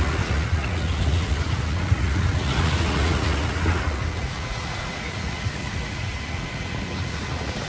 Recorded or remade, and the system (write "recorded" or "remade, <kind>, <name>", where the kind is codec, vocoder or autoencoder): remade, vocoder, Vocos